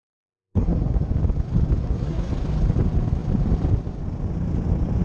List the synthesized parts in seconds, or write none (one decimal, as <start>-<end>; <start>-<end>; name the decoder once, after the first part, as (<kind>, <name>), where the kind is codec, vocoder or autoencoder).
0.0-1.1 (codec, SNAC); 1.8-2.3